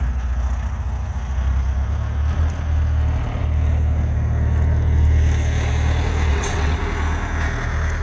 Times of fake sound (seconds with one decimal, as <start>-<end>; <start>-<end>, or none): 6.3-6.8

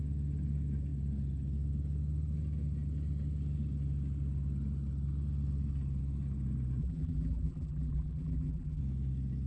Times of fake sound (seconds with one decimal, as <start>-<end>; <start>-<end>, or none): 6.8-8.8

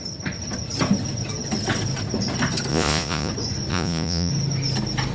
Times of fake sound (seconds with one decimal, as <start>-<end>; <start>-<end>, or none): 2.7-3.3; 3.7-4.3

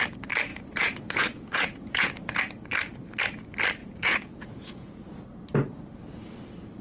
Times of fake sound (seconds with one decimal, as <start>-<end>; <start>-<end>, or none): 0.5-2.4; 3.8-5.2

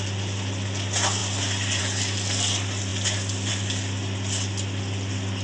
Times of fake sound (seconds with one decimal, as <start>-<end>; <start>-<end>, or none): none

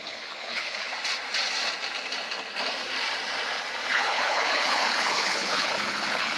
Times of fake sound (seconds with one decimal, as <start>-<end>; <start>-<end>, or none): 0.0-0.9; 3.9-6.4